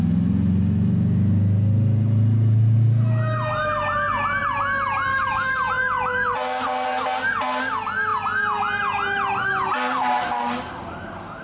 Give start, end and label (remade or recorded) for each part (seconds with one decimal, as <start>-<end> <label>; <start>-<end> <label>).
0.0-5.1 recorded; 5.1-5.7 remade; 5.7-11.4 recorded